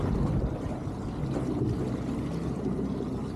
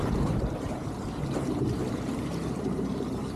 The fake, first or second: second